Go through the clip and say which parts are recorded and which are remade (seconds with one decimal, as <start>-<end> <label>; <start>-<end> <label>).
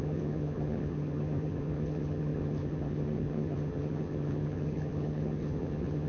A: 0.0-6.1 remade